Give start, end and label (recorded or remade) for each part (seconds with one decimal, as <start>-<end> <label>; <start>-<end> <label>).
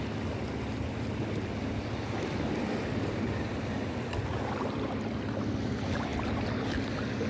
0.0-7.3 recorded